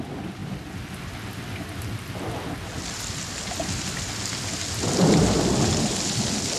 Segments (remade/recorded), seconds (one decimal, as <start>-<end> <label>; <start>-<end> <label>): 0.0-6.6 recorded